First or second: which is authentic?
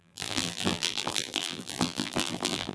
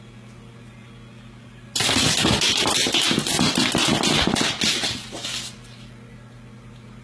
second